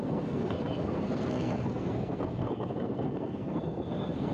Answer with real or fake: fake